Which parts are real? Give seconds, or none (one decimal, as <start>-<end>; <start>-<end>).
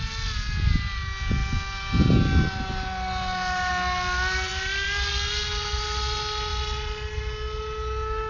0.0-8.3